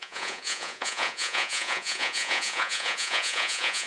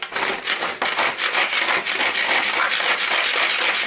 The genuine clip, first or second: second